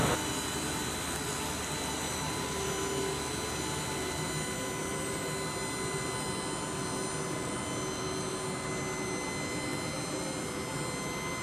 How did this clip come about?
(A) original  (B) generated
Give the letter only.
A